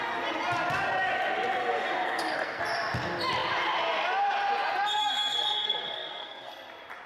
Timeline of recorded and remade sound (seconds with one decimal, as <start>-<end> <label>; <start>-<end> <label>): 0.0-1.6 recorded; 1.6-2.6 remade; 2.6-5.0 recorded; 5.0-6.5 remade; 6.5-7.1 recorded